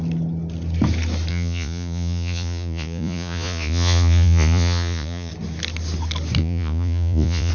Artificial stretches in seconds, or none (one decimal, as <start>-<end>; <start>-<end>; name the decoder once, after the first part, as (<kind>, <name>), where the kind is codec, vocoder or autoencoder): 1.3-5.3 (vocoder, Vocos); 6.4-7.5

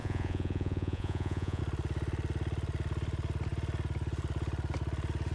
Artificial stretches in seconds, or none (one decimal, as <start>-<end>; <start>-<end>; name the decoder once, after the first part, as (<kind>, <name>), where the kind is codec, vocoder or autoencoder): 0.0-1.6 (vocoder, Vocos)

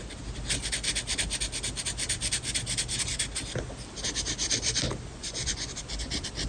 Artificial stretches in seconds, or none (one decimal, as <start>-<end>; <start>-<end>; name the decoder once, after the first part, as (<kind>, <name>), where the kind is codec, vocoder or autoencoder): 5.1-5.7 (vocoder, Vocos)

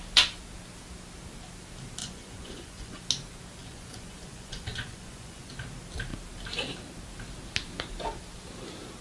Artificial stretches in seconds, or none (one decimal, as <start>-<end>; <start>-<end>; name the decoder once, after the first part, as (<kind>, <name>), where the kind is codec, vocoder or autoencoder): 2.0-3.0 (vocoder, Vocos); 3.6-5.5

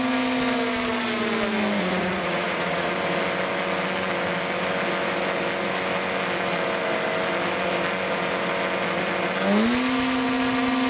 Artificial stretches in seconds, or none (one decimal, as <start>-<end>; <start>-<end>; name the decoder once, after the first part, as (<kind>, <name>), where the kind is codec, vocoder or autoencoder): 1.8-2.9 (vocoder, Vocos)

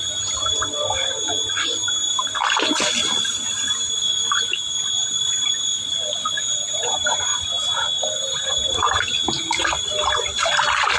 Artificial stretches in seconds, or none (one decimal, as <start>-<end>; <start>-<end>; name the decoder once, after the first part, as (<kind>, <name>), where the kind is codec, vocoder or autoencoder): 7.3-8.1 (vocoder, BigVGAN v2)

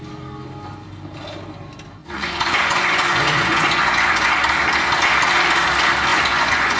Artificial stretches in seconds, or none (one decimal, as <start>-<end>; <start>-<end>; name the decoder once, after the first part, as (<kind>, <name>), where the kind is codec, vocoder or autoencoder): 2.0-4.3 (vocoder, Vocos); 6.1-6.8

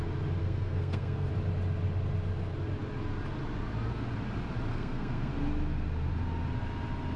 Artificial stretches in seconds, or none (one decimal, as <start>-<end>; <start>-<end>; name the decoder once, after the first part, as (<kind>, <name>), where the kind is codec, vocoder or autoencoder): 0.4-1.3 (codec, SNAC); 4.7-5.3